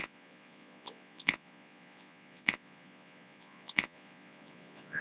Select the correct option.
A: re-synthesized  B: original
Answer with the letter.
A